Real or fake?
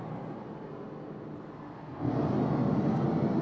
real